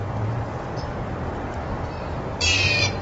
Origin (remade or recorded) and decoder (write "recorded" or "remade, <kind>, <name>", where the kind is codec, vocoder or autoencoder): remade, vocoder, BigVGAN v2